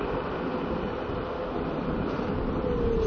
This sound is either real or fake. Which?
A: real